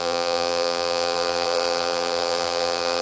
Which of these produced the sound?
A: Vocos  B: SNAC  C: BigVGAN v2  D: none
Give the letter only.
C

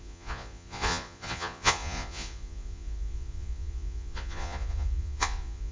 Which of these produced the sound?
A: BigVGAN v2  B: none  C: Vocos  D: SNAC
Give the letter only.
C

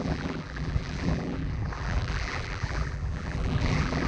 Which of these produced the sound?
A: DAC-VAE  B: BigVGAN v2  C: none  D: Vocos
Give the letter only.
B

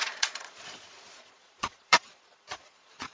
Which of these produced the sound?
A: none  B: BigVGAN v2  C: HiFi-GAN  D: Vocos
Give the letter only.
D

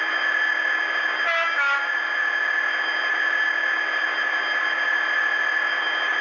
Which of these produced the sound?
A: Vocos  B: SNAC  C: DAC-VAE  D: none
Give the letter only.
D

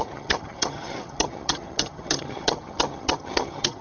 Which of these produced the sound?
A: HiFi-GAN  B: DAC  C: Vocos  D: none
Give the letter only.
A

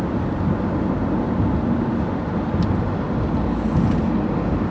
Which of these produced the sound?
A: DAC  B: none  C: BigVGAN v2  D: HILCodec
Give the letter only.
B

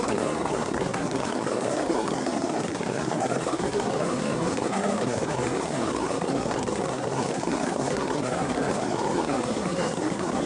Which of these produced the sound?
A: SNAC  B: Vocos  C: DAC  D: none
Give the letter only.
A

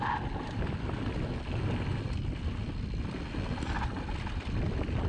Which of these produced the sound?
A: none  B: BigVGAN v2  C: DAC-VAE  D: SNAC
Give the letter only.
A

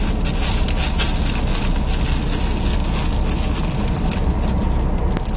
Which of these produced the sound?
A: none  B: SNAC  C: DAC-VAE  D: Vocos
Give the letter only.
A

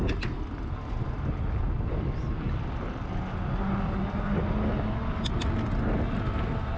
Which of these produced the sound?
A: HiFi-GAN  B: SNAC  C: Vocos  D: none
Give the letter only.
D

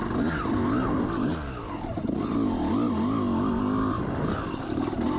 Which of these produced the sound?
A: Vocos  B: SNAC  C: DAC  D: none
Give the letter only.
D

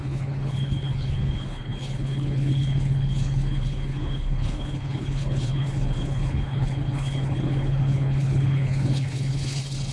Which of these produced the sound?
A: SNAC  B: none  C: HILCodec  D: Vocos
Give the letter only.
C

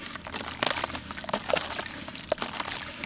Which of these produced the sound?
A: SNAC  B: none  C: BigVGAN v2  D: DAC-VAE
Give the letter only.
B